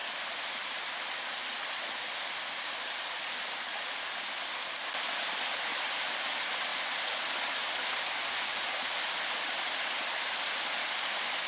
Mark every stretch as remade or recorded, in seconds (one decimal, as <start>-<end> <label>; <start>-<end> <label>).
0.0-11.5 recorded